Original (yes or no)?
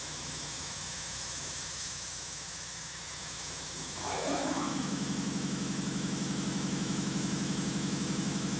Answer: no